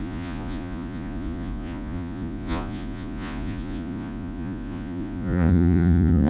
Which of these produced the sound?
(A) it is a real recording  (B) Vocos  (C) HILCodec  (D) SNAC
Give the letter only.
B